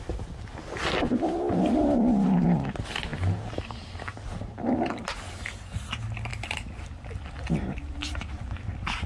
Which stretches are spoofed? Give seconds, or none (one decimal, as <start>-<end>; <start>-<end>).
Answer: 6.3-6.9; 7.6-8.4